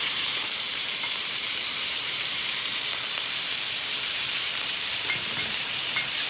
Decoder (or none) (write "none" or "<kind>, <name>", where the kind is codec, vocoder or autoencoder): vocoder, BigVGAN v2